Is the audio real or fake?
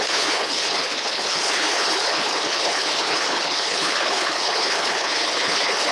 fake